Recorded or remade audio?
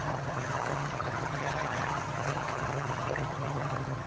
remade